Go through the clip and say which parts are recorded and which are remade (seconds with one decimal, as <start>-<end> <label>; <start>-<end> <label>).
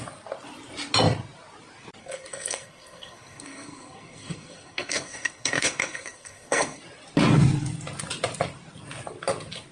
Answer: 0.0-2.0 recorded; 2.0-6.8 remade; 6.8-9.7 recorded